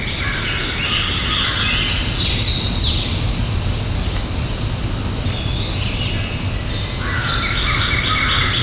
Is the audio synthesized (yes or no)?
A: no